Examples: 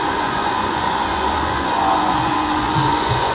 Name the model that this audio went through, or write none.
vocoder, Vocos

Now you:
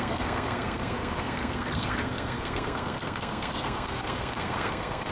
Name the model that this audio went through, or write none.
codec, SNAC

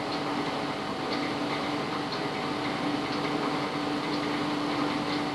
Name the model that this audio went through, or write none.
none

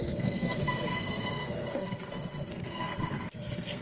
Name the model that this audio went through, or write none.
codec, SNAC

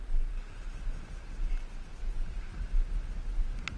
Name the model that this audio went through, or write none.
none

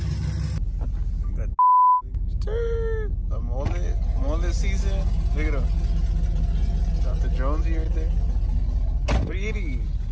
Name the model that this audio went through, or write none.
none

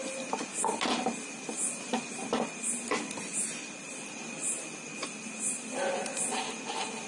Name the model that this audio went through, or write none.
none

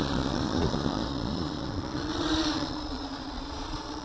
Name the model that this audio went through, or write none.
vocoder, Vocos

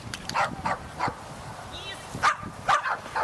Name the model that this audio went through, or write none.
none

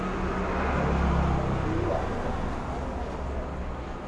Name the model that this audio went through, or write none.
none